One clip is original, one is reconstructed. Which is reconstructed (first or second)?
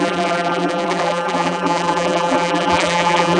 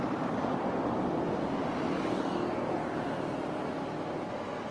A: first